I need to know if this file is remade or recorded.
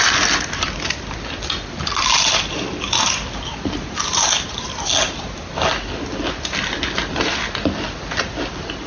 recorded